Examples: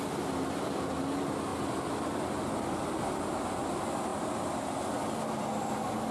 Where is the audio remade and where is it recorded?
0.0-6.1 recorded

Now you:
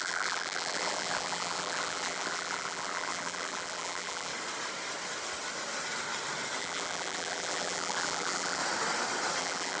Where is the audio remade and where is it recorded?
0.0-4.3 remade; 4.3-6.6 recorded; 6.6-8.6 remade; 8.6-9.4 recorded; 9.4-9.8 remade

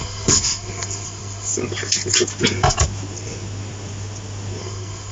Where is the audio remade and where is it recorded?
0.0-1.5 remade; 1.5-4.6 recorded; 4.6-5.1 remade

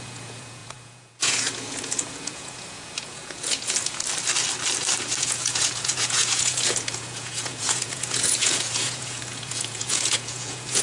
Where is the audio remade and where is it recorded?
0.0-4.0 remade; 4.0-5.2 recorded; 5.2-10.8 remade